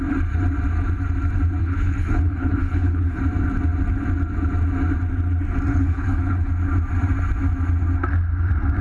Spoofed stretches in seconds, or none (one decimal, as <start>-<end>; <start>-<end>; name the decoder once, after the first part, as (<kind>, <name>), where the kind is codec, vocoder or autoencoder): 1.6-3.2 (codec, HILCodec); 5.7-6.5

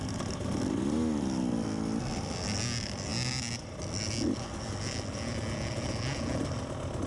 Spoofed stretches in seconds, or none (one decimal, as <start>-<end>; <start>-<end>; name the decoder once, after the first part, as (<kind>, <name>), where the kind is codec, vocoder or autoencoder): none

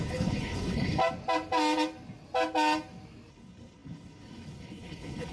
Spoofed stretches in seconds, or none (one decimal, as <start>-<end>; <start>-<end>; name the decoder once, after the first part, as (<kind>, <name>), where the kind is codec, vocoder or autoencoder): 0.0-1.0 (codec, HILCodec); 3.3-5.3

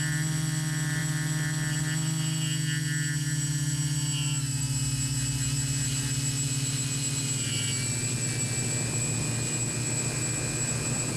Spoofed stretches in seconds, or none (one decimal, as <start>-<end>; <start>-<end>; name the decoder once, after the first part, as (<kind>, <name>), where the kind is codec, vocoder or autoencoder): none

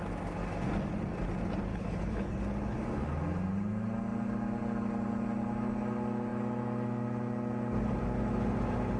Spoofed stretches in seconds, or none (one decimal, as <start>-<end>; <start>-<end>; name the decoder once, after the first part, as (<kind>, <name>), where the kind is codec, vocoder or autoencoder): 1.7-2.4 (codec, HILCodec)

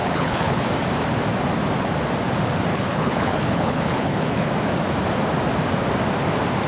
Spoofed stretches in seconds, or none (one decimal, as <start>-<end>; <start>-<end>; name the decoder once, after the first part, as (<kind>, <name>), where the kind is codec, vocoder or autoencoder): 0.0-0.6 (codec, HILCodec); 2.7-4.5

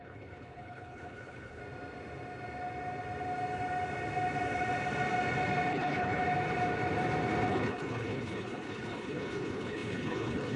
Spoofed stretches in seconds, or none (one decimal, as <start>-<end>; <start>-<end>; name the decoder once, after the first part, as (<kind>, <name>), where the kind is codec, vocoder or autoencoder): 0.0-1.6 (codec, HILCodec); 5.7-6.2; 7.5-10.6

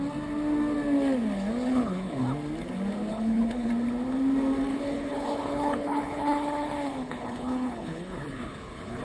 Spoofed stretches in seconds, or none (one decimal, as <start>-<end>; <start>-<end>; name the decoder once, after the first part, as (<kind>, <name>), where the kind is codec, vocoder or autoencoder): 1.7-2.2 (codec, HILCodec); 3.1-3.7; 4.7-9.0